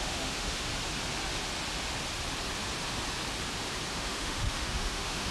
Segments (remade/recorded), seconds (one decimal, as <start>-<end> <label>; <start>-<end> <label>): 0.0-0.7 remade; 0.7-3.9 recorded; 3.9-5.3 remade